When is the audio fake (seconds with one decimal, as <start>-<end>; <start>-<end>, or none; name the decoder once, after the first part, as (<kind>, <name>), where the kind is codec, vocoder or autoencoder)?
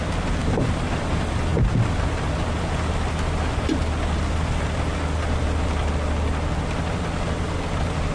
none